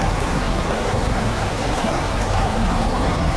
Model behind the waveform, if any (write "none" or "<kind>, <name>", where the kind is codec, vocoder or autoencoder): codec, SNAC